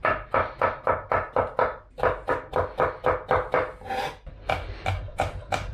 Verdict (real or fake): real